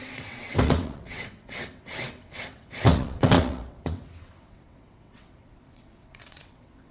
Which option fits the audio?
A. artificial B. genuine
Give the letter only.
A